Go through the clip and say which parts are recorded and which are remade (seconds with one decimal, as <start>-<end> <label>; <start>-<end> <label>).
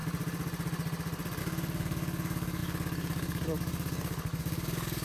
0.0-1.4 recorded; 1.4-5.0 remade